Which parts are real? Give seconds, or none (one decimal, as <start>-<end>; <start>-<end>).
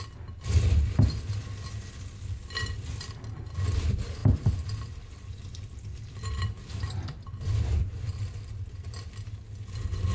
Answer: 0.0-10.1